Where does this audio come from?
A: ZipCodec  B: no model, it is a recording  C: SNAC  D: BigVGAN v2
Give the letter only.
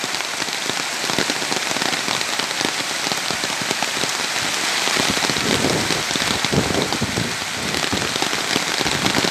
B